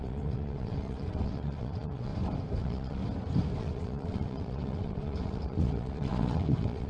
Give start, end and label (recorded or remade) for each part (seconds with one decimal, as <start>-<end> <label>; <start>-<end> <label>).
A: 0.0-2.1 remade; 2.1-2.6 recorded; 2.6-3.0 remade; 3.0-3.6 recorded; 3.6-6.9 remade